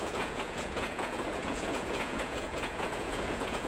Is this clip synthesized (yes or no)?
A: yes